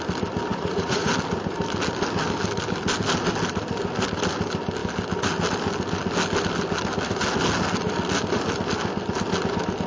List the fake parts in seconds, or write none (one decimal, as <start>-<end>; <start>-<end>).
0.5-1.1